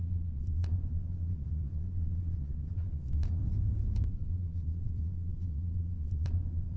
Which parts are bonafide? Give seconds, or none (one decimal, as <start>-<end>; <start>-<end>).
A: 3.4-4.1